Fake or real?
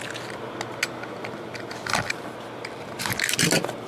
real